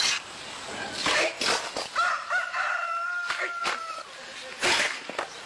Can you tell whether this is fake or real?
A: real